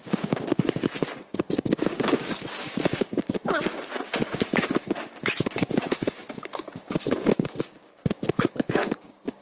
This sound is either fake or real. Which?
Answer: fake